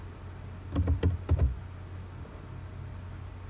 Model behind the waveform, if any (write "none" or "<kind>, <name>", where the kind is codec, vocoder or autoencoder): none